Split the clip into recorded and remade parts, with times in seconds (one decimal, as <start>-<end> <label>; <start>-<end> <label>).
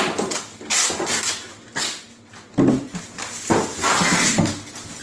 0.0-5.0 recorded